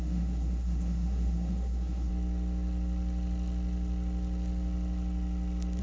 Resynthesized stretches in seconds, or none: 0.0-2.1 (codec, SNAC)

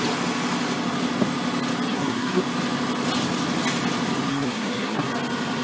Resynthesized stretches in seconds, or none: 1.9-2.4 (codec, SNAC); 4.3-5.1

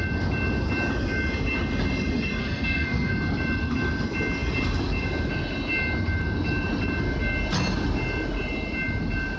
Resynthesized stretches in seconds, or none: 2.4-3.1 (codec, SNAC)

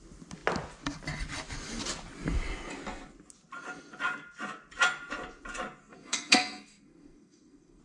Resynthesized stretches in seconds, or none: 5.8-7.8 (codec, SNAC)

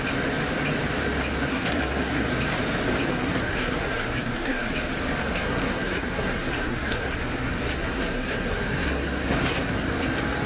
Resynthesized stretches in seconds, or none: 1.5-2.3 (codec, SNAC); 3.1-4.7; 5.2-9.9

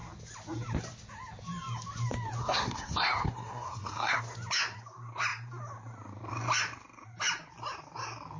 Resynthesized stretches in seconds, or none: 2.4-4.2 (codec, SNAC)